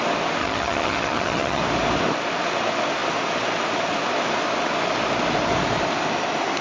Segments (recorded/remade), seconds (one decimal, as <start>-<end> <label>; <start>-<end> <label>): 0.0-0.4 recorded; 0.4-1.6 remade; 1.6-6.6 recorded